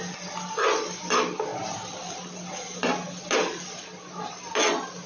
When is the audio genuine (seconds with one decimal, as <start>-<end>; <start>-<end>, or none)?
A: 0.0-5.1

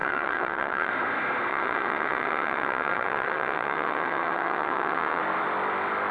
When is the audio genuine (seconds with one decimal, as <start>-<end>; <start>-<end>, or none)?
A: 0.9-1.5; 5.2-6.1

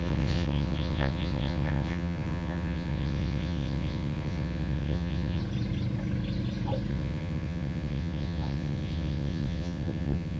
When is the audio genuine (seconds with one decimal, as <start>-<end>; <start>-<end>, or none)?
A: 5.4-6.9

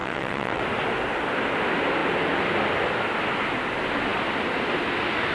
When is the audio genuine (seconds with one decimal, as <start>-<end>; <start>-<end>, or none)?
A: 0.6-5.3

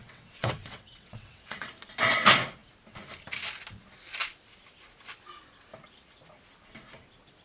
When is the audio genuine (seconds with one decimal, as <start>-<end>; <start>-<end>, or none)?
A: 1.7-7.4

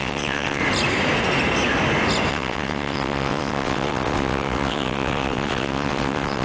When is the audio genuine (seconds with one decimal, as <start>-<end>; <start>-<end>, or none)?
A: 0.6-2.3

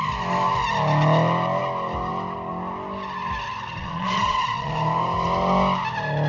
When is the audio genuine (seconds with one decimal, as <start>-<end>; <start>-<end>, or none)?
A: 0.0-3.8; 4.7-6.3

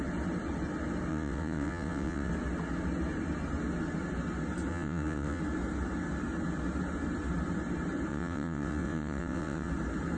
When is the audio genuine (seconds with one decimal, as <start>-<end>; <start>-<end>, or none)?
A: 0.0-1.1; 2.3-4.7; 5.4-8.1; 9.7-10.2